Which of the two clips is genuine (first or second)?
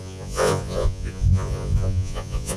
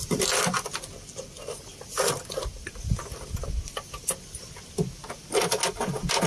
second